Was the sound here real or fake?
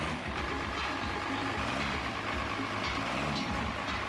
real